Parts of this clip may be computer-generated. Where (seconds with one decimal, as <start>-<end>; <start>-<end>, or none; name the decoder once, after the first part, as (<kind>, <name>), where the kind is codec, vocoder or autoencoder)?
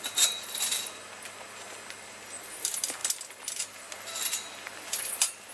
none